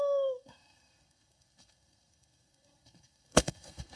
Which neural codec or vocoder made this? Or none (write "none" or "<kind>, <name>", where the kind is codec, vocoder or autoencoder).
codec, SNAC